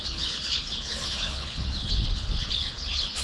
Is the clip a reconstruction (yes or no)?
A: yes